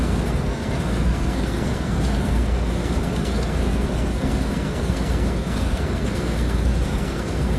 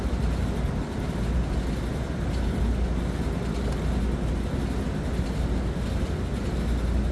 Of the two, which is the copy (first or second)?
first